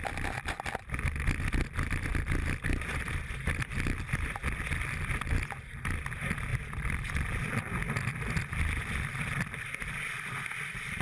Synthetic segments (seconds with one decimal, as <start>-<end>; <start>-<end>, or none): none